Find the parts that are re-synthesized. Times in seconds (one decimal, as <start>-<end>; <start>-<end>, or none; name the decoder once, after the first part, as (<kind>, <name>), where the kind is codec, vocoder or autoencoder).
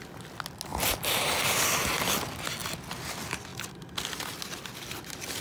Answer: none